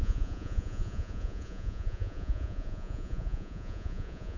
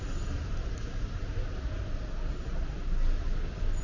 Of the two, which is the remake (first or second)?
first